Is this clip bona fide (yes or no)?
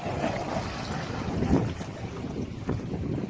yes